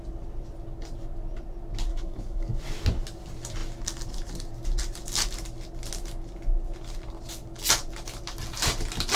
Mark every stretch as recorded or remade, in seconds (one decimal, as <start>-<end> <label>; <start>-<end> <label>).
0.0-1.9 recorded; 1.9-2.6 remade; 2.6-9.2 recorded